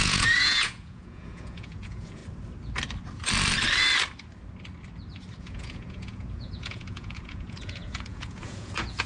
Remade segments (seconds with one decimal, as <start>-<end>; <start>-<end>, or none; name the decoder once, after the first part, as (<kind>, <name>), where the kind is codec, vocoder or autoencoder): 0.0-2.2 (vocoder, Vocos); 5.4-9.1